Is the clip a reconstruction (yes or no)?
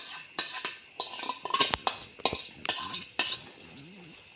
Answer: no